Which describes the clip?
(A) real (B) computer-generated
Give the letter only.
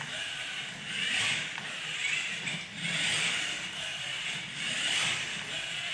A